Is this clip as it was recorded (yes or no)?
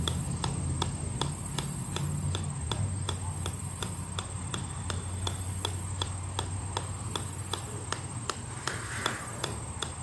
yes